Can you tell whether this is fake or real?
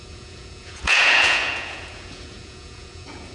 fake